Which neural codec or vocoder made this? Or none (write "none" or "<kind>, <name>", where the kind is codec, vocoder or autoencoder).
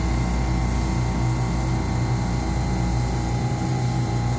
none